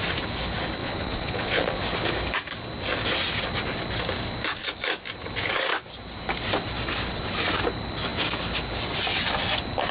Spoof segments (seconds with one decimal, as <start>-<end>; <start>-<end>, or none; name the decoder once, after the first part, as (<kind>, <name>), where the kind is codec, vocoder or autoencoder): 0.8-1.8 (vocoder, Vocos)